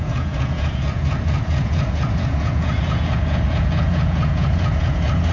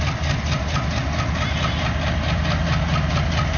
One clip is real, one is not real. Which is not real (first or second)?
first